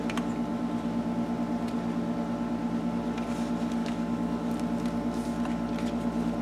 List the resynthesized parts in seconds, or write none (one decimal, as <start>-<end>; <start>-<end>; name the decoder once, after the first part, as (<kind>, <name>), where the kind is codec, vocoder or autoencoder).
3.8-4.5 (codec, DAC)